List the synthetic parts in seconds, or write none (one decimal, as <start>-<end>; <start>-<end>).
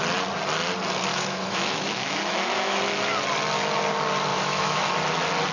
1.1-2.8; 4.3-4.9